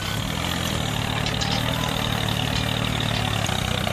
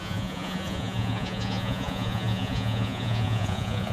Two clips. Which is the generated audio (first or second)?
second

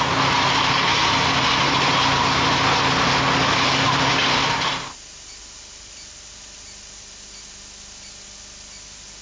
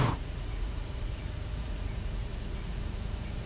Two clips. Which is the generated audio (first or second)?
second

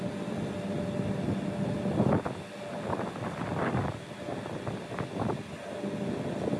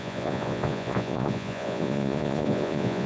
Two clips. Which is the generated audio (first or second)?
second